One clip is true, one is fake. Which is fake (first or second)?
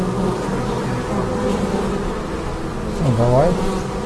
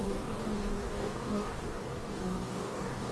second